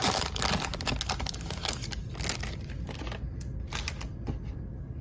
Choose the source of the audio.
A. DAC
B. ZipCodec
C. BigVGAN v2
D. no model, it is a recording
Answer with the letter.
D